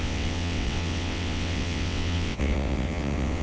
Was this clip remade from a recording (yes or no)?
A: yes